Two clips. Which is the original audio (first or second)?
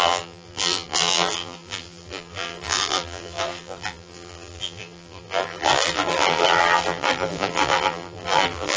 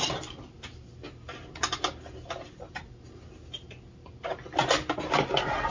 second